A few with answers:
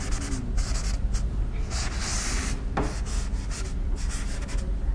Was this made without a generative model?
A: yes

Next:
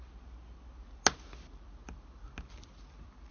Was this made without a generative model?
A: yes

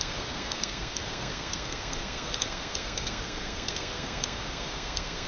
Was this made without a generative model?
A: no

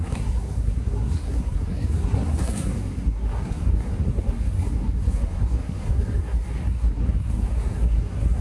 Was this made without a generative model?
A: no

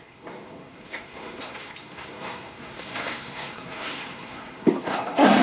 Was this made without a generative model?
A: no